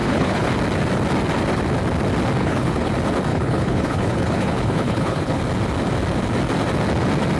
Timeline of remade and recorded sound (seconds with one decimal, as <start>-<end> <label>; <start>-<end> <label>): 0.0-0.5 remade; 0.5-2.4 recorded; 2.4-2.9 remade; 2.9-3.3 recorded; 3.3-5.4 remade; 5.4-7.4 recorded